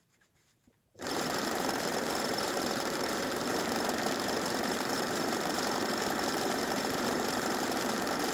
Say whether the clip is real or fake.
fake